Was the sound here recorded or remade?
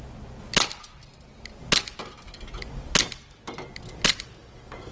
recorded